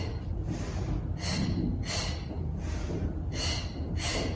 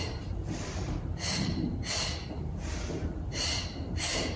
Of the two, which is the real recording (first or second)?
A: first